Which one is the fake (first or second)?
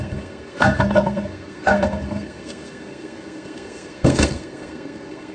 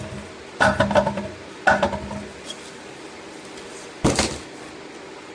first